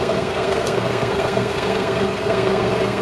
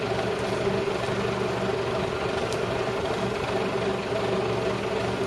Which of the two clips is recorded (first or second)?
second